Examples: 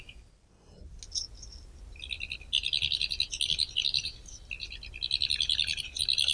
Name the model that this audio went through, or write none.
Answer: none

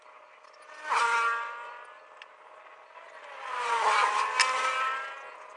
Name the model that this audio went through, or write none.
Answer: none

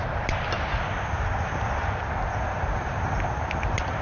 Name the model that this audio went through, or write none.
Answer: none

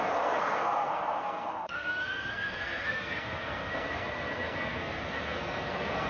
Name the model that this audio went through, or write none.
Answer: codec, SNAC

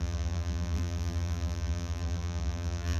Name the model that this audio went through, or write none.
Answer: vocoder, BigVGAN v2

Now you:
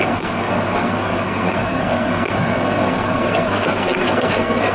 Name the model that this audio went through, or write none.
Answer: codec, SNAC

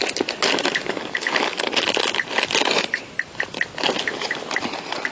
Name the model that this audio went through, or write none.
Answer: none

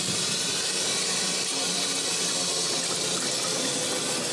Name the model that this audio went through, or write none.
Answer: none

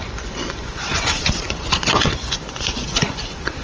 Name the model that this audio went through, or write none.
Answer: vocoder, Vocos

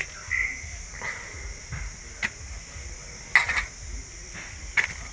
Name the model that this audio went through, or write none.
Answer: none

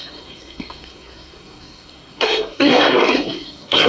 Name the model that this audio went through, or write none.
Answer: codec, SNAC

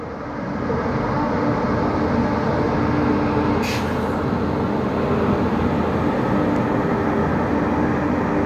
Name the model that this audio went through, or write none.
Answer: none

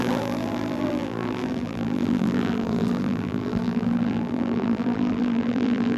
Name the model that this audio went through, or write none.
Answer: vocoder, BigVGAN v2